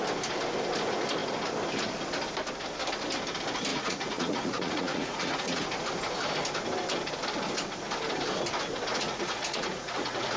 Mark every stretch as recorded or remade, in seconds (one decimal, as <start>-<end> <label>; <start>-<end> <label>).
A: 0.0-3.7 recorded; 3.7-5.6 remade; 5.6-8.9 recorded; 8.9-10.4 remade